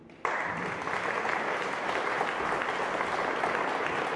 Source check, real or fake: real